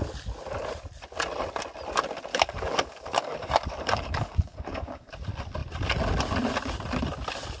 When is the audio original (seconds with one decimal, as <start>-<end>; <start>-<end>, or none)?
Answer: 0.0-2.3; 5.1-7.6